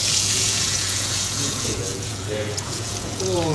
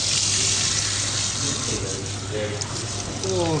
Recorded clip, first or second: second